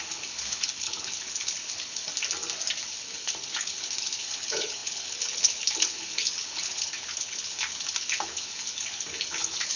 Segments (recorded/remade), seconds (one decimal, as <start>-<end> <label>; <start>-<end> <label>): 0.0-2.0 remade; 2.0-2.8 recorded; 2.8-9.8 remade